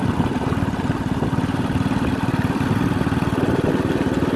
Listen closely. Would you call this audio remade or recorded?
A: recorded